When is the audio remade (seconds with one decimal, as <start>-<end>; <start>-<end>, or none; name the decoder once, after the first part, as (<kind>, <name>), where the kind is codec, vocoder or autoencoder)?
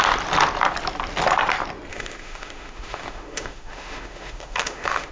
1.9-5.1 (autoencoder, DAC-VAE)